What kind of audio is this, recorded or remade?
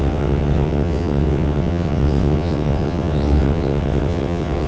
remade